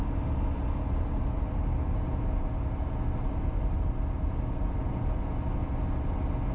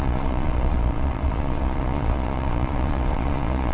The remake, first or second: second